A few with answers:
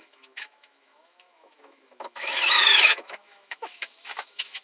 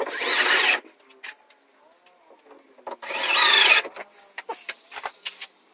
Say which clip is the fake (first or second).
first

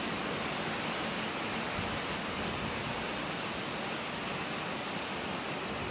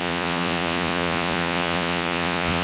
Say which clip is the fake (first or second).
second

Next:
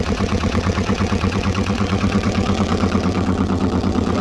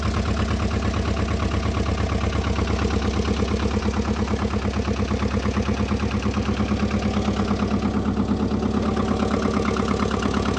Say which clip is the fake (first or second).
first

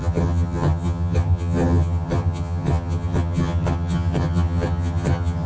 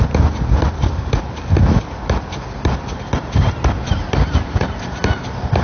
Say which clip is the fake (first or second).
first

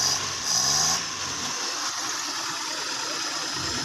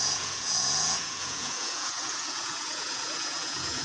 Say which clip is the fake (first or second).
second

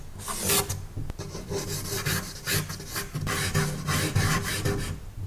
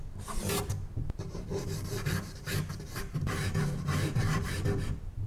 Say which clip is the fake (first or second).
second